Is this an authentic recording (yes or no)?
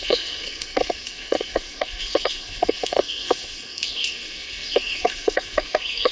no